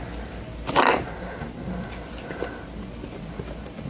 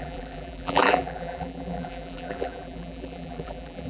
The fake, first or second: second